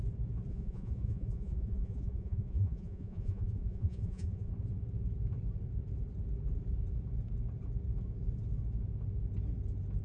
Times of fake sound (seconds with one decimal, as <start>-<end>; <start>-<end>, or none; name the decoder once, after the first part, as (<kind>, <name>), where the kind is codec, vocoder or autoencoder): 0.5-4.5 (vocoder, Vocos)